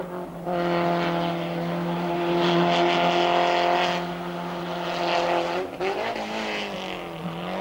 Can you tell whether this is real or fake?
real